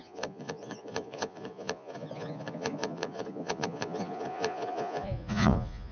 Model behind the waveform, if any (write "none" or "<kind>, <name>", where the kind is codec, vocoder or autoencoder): vocoder, Vocos